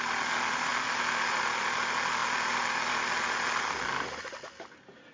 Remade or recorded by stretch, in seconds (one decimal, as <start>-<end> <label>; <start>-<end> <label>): 0.0-5.1 recorded